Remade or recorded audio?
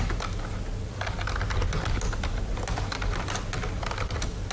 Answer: recorded